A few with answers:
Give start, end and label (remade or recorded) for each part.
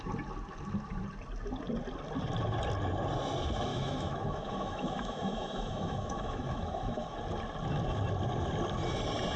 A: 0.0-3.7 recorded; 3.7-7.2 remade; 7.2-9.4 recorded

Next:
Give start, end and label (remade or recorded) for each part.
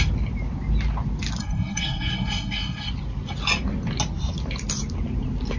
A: 0.0-1.4 recorded; 1.4-2.9 remade; 2.9-5.6 recorded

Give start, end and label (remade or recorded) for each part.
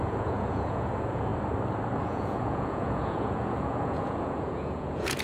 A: 0.0-1.3 remade; 1.3-2.0 recorded; 2.0-5.2 remade